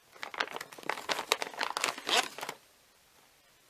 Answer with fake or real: real